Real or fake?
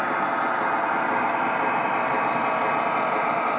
real